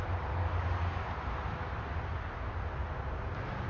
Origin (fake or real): real